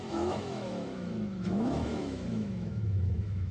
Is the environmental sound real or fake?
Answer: fake